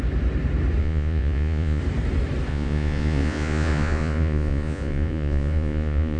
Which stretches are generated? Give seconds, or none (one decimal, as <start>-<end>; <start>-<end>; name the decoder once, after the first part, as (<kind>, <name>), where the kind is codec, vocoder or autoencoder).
0.8-1.8 (vocoder, Vocos); 2.5-6.2